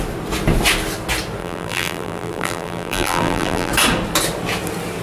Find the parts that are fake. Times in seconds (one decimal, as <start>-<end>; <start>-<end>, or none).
1.4-3.7

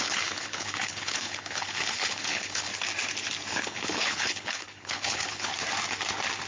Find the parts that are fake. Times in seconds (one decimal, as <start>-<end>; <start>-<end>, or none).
0.0-2.7; 3.5-5.5

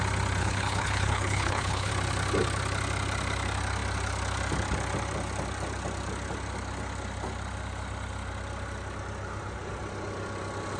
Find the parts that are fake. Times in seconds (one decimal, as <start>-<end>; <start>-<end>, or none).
0.4-1.9

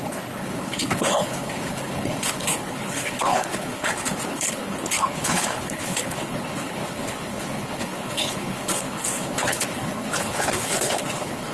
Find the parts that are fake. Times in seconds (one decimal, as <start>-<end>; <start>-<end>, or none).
0.0-11.5

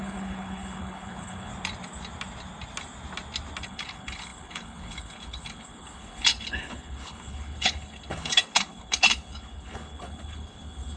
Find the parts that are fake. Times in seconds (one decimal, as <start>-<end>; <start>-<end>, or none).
0.0-1.5; 3.6-11.0